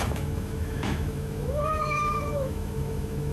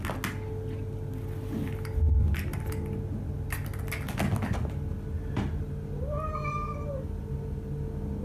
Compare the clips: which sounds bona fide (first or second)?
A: second